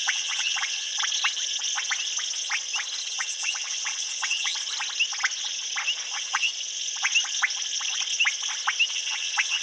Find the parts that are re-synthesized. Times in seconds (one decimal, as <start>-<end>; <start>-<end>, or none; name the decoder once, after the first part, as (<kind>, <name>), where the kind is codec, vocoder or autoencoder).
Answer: 0.0-0.9 (vocoder, WaveNeXt); 3.0-4.5; 6.1-6.5; 8.9-9.6